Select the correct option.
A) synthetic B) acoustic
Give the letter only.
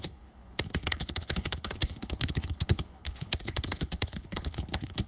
A